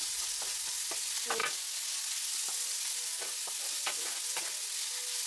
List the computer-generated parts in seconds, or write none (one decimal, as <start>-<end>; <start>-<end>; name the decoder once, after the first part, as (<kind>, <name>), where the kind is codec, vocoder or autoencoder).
none